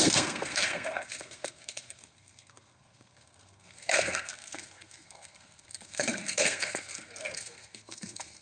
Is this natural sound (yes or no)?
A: no